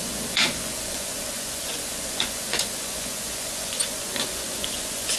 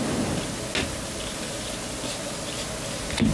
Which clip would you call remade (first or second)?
first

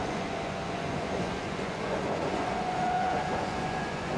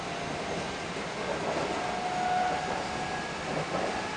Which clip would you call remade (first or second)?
first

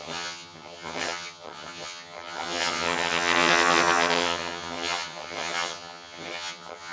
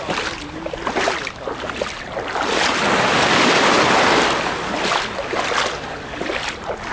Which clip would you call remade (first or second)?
first